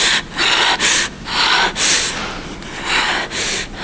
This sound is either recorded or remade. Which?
recorded